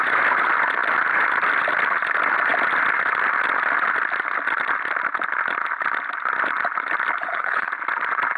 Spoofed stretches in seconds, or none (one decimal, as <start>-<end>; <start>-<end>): 7.2-7.7